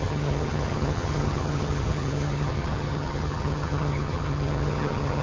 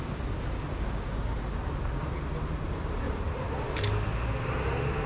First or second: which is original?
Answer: second